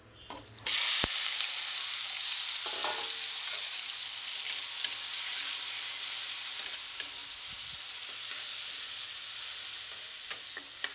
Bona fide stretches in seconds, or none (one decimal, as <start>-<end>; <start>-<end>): 0.0-10.9